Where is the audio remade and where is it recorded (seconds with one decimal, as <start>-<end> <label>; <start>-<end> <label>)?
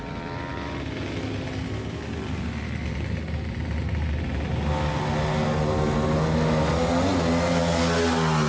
0.0-8.5 recorded